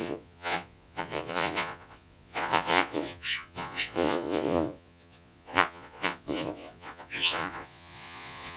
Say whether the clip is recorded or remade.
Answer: remade